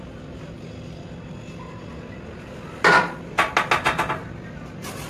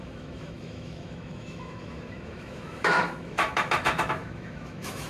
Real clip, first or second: first